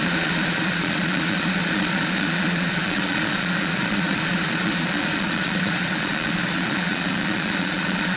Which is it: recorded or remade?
remade